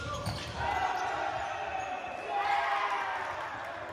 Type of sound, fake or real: real